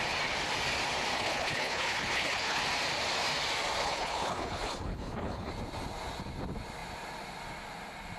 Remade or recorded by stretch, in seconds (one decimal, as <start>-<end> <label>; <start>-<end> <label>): 0.0-1.1 recorded; 1.1-2.6 remade; 2.6-3.8 recorded; 3.8-5.5 remade; 5.5-8.2 recorded